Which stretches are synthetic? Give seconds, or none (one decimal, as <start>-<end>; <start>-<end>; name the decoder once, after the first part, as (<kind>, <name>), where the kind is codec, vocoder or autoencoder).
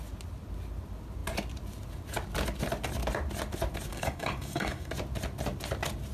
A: 3.9-4.9 (codec, DAC)